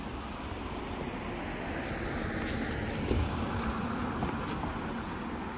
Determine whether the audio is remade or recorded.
recorded